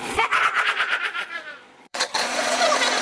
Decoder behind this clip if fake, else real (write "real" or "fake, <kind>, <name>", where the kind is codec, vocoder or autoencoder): fake, vocoder, Vocos